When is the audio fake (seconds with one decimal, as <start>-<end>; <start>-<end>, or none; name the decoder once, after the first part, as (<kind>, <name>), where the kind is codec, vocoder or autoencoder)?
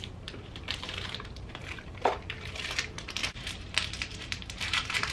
0.0-5.1 (vocoder, BigVGAN v2)